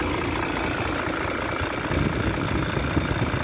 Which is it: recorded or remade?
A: recorded